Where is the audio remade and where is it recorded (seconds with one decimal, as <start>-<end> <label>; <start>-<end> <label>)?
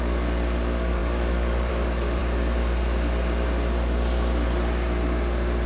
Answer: 0.0-2.2 remade; 2.2-5.7 recorded